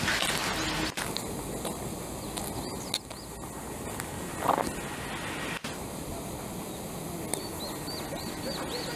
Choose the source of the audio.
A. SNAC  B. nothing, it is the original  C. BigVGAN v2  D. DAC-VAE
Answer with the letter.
B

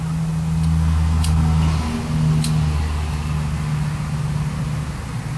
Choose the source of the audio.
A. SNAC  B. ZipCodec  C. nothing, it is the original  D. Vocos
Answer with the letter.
C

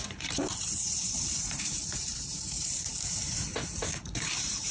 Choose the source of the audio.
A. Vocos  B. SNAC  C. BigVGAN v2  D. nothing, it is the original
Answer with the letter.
C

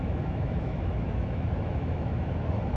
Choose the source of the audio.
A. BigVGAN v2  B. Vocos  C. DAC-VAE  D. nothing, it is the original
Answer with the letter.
C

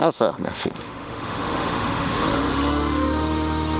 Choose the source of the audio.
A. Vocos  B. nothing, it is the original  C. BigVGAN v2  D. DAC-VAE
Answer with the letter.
D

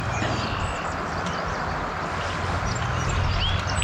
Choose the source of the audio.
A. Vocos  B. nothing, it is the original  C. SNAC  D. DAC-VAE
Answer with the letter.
B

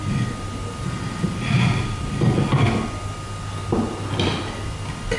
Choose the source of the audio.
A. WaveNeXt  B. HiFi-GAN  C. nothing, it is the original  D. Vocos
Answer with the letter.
C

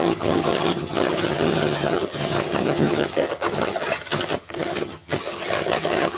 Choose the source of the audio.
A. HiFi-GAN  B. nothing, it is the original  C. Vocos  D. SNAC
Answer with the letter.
A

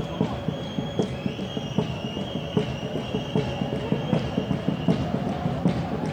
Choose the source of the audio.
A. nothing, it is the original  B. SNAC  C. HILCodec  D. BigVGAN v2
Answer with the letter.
A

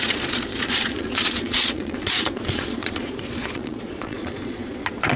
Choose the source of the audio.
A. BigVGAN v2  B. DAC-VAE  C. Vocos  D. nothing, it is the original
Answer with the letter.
C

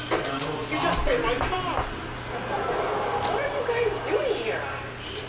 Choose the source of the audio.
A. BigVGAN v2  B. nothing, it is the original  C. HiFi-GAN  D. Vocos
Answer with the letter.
B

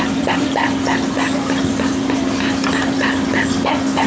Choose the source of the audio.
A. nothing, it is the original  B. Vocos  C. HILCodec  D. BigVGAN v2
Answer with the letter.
A